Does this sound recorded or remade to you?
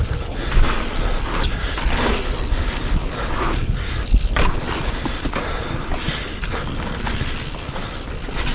recorded